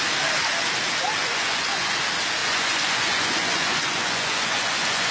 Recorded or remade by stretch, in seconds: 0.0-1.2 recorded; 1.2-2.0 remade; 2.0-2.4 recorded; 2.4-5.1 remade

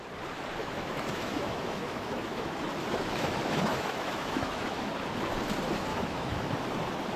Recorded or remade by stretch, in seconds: 0.0-0.6 recorded; 0.6-4.9 remade; 4.9-5.9 recorded; 5.9-6.5 remade; 6.5-7.2 recorded